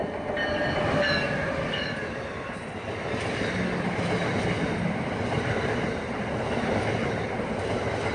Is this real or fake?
real